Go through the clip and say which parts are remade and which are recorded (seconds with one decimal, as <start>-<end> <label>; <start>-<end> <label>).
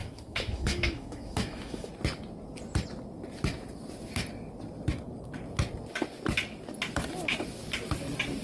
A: 0.0-1.9 remade; 1.9-8.4 recorded